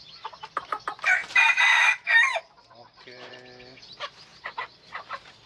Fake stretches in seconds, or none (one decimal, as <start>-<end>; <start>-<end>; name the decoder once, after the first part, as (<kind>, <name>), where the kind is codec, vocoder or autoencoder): 1.2-3.3 (vocoder, BigVGAN v2); 4.3-4.9